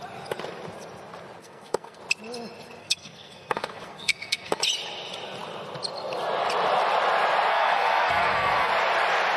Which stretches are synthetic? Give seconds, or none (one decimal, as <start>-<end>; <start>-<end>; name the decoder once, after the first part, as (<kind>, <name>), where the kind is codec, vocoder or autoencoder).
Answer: 1.4-2.0 (codec, SNAC); 2.8-4.6; 7.5-8.7